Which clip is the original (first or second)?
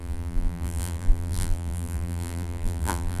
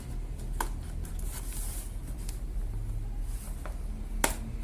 second